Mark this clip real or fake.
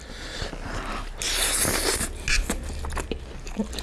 real